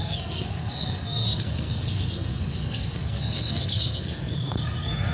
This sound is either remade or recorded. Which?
remade